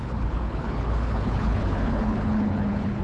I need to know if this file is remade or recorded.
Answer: remade